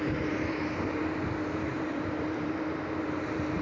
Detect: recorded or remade remade